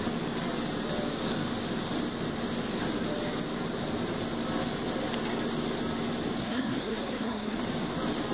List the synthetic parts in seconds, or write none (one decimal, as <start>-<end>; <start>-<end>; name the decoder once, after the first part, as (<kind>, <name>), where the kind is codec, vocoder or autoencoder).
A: 6.4-7.6 (codec, SNAC)